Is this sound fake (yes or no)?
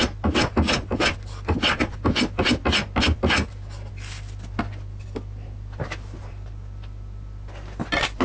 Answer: no